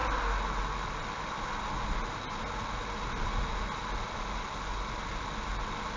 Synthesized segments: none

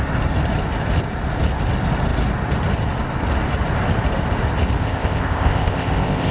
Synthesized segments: 4.8-6.3 (codec, ZipCodec)

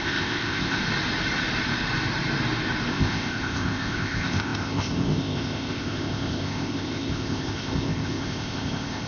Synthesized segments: 0.0-0.8 (codec, ZipCodec); 2.9-9.1

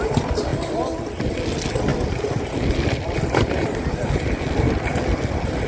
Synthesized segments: none

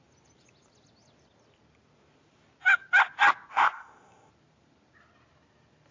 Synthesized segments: 3.5-4.3 (codec, ZipCodec)

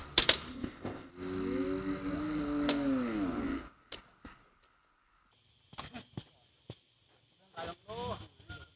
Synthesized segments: 0.5-1.1 (codec, ZipCodec)